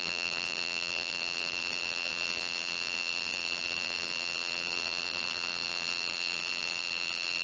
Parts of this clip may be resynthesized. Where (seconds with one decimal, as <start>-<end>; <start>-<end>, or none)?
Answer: 0.0-7.4